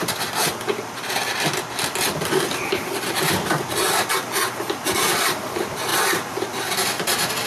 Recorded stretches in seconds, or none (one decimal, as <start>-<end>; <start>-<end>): none